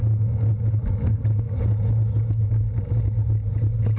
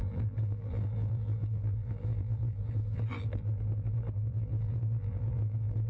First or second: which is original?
first